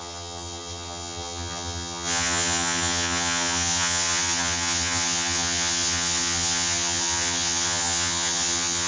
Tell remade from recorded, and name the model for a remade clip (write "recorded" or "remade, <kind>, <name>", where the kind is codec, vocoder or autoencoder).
remade, vocoder, HiFi-GAN